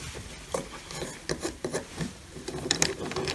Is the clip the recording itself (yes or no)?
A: yes